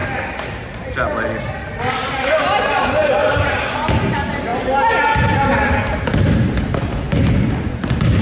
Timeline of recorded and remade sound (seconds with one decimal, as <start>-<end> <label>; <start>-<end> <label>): 0.0-8.2 recorded